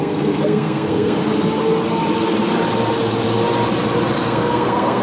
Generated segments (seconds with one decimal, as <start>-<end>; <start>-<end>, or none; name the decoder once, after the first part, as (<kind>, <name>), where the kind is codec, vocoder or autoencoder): 0.0-1.2 (codec, SNAC); 4.2-5.0